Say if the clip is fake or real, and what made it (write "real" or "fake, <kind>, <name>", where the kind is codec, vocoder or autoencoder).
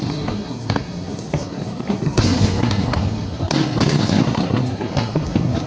fake, codec, SNAC